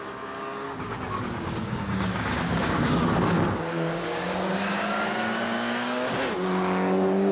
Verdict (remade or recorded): remade